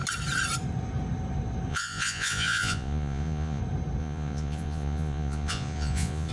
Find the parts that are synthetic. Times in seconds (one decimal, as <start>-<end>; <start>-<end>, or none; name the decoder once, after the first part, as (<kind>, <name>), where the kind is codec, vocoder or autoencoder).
1.7-3.6 (vocoder, Vocos); 4.0-6.3